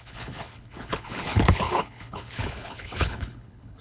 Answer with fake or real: fake